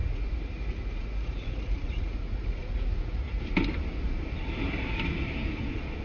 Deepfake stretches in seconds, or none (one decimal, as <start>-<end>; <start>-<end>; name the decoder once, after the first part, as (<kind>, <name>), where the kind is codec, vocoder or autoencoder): 0.0-3.4 (vocoder, Vocos)